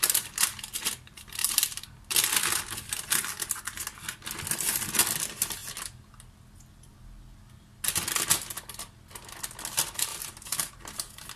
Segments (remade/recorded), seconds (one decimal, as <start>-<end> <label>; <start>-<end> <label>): 0.0-1.4 recorded; 1.4-1.9 remade; 1.9-10.1 recorded; 10.1-10.7 remade; 10.7-11.4 recorded